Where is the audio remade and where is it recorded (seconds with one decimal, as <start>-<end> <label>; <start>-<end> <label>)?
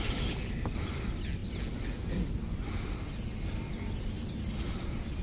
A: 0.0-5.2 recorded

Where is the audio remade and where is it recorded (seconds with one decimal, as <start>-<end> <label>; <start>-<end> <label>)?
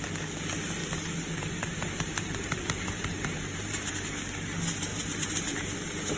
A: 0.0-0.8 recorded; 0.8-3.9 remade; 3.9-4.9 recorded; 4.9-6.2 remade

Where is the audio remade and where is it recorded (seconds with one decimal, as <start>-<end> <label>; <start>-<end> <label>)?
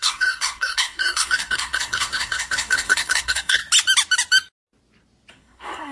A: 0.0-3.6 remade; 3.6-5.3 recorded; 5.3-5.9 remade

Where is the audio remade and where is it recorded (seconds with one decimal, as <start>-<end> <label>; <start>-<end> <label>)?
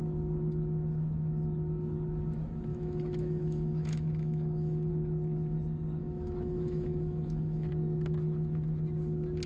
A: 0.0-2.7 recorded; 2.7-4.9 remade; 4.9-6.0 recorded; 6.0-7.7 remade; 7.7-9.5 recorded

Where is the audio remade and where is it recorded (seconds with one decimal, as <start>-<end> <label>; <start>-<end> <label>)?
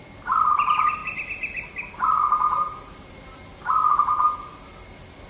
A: 0.0-1.0 remade; 1.0-3.1 recorded; 3.1-3.5 remade; 3.5-5.3 recorded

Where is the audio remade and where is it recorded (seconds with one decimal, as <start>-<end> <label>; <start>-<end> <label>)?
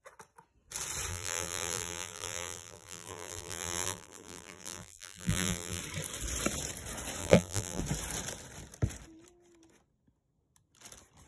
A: 0.0-1.1 recorded; 1.1-5.8 remade; 5.8-7.2 recorded; 7.2-7.8 remade; 7.8-11.3 recorded